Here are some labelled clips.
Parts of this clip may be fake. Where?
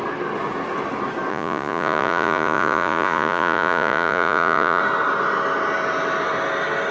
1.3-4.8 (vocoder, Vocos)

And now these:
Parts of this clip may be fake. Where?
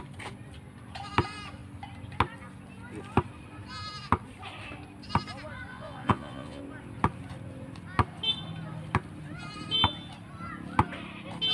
5.7-6.6 (vocoder, Vocos)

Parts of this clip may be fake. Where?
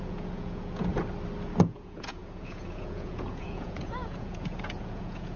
0.0-0.9 (vocoder, Vocos); 1.6-5.4